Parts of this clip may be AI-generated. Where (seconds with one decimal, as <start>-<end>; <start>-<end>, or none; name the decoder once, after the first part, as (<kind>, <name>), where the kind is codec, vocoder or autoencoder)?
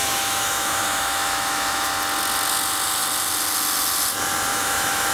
0.0-1.9 (autoencoder, DAC-VAE); 4.5-5.1